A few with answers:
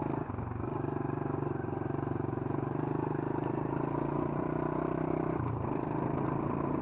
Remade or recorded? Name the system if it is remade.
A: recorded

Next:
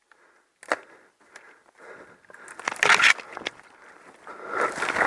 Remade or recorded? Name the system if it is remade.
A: recorded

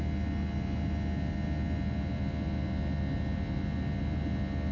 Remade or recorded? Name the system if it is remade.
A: recorded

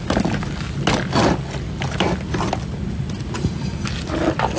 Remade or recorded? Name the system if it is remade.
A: recorded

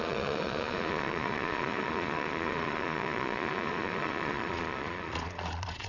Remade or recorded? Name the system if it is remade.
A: remade, vocoder, Vocos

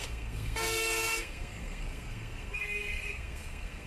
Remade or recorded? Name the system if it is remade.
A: remade, codec, SNAC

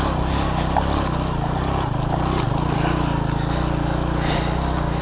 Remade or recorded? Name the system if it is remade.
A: recorded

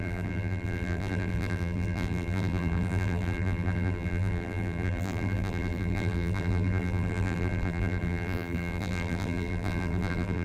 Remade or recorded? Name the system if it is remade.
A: remade, vocoder, BigVGAN v2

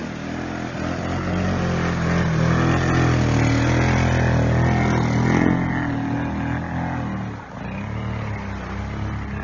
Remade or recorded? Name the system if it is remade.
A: recorded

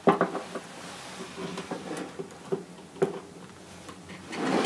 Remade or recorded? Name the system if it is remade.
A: recorded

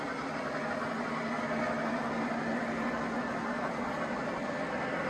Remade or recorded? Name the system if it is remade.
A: recorded